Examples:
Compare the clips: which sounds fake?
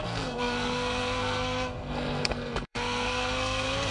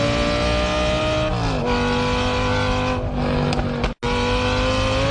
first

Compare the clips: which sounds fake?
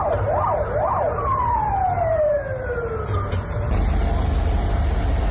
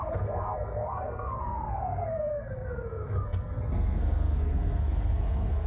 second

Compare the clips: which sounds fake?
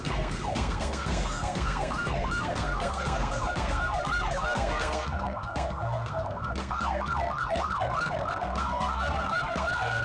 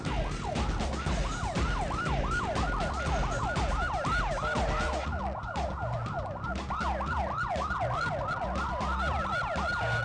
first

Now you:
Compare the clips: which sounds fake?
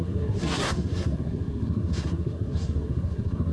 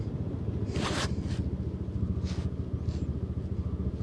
first